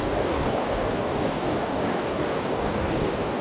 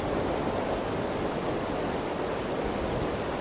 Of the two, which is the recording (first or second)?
second